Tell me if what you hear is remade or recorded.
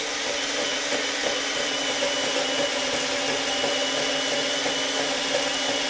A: recorded